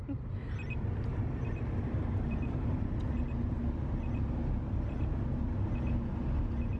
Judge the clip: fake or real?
real